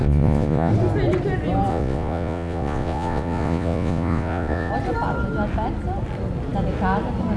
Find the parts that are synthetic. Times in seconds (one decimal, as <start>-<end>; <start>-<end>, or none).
0.0-0.7; 1.7-4.7